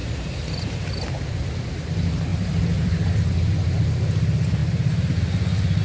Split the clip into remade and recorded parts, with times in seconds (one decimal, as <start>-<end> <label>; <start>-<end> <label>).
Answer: 0.0-1.7 remade; 1.7-2.3 recorded; 2.3-3.0 remade; 3.0-5.8 recorded

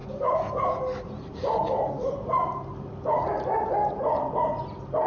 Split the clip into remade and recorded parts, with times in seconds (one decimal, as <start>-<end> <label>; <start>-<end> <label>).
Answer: 0.0-3.1 remade; 3.1-5.1 recorded